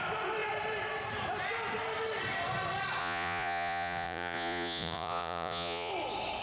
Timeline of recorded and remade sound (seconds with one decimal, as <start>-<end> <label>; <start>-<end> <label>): 0.0-3.0 recorded; 3.0-5.9 remade; 5.9-6.4 recorded

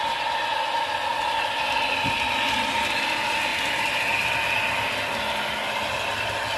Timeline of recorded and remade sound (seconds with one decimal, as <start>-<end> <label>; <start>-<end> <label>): 0.0-6.6 recorded

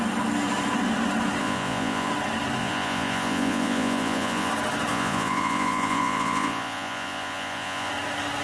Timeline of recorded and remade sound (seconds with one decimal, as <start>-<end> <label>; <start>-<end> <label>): 0.0-1.4 recorded; 1.4-2.1 remade; 2.1-2.6 recorded; 2.6-4.5 remade; 4.5-4.9 recorded; 4.9-7.9 remade; 7.9-8.4 recorded

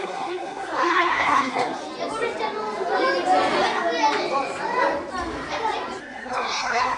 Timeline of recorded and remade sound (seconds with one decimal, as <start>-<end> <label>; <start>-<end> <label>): 0.0-1.8 remade; 1.8-6.0 recorded; 6.0-7.0 remade

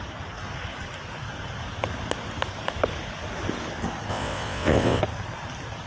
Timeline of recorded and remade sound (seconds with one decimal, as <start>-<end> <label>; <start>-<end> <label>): 0.0-4.1 recorded; 4.1-5.0 remade; 5.0-5.9 recorded

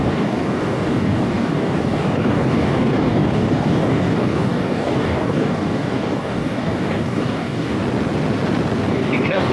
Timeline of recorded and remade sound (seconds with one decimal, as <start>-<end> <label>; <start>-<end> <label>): 0.0-7.8 remade; 7.8-8.9 recorded; 8.9-9.5 remade